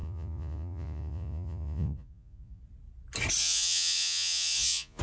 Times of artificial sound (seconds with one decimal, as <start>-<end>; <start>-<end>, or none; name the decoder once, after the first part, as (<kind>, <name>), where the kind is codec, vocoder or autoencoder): 0.0-2.6 (vocoder, Vocos); 3.4-5.0